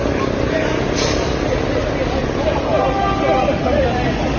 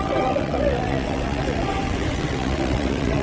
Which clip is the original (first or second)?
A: first